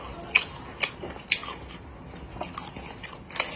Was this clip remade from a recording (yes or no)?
no